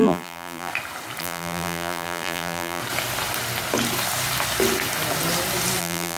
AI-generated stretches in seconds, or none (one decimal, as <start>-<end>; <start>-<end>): 0.0-0.7; 1.2-2.8; 5.8-6.2